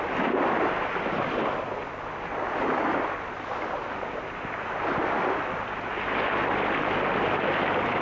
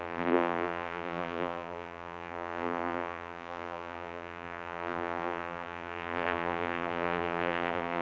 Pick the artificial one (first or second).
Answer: second